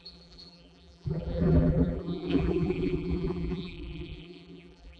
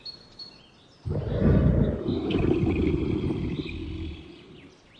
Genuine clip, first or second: second